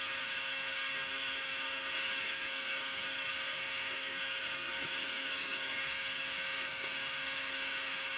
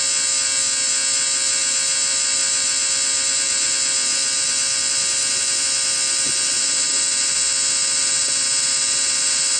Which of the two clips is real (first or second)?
second